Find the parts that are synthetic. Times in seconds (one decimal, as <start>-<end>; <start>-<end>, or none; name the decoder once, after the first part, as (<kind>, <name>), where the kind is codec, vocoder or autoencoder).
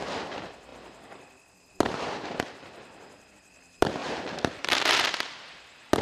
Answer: 4.0-5.1 (vocoder, BigVGAN v2)